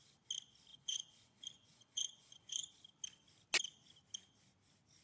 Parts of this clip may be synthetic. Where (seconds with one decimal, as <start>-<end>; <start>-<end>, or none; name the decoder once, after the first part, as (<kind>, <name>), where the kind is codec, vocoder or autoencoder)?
0.7-2.7 (vocoder, Vocos)